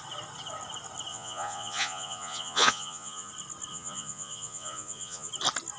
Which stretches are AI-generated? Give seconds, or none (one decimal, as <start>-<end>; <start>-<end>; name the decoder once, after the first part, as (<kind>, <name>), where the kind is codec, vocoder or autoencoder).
1.1-3.3 (vocoder, Vocos); 3.7-5.3